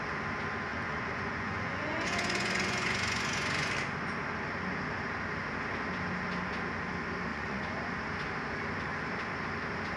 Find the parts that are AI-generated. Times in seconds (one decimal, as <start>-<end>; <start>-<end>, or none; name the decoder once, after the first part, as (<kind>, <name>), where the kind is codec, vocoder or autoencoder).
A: 0.7-3.7 (vocoder, Vocos); 7.3-7.9

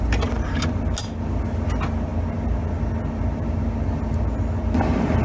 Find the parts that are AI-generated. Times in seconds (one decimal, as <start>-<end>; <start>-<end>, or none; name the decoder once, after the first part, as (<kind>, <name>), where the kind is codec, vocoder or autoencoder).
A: none

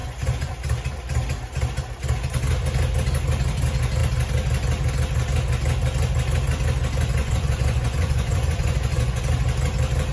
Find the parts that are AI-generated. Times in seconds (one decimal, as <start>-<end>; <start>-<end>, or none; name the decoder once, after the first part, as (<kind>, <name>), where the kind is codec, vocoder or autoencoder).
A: 0.0-0.5 (vocoder, Vocos); 7.2-9.2

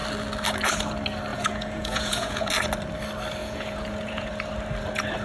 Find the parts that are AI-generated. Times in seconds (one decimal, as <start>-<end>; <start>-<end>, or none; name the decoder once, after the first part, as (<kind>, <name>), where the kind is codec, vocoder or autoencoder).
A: 1.3-2.5 (vocoder, Vocos); 3.4-4.3

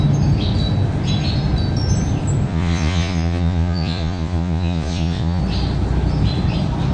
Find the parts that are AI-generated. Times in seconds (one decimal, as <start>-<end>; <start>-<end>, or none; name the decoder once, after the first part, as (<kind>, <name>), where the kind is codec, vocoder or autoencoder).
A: 2.5-5.4 (vocoder, Vocos)

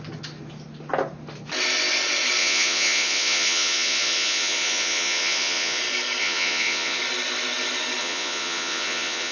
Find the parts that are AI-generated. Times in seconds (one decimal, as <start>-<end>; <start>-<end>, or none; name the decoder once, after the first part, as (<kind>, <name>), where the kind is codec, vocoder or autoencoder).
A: 2.4-5.8 (vocoder, Vocos); 6.2-7.0; 8.0-9.3

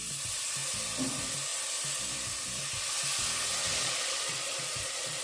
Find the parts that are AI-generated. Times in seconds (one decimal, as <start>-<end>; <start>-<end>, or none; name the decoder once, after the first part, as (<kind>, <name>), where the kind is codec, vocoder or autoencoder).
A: 3.6-5.2 (vocoder, Vocos)

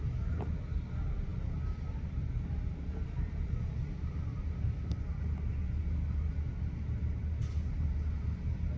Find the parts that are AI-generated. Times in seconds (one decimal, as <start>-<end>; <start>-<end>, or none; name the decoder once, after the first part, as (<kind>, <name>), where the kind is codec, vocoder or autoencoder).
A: none